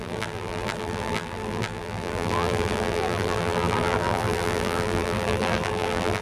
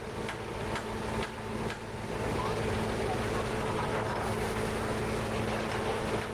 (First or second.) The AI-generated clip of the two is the first